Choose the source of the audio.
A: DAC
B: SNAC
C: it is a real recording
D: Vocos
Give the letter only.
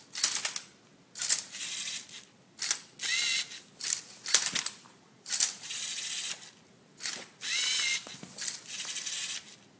C